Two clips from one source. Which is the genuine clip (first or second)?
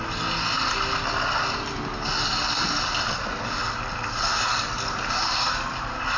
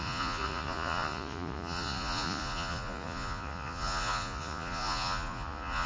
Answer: first